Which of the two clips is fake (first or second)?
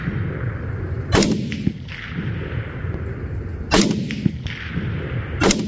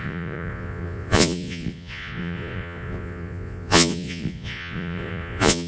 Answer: second